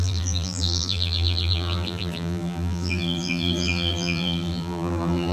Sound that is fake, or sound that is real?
fake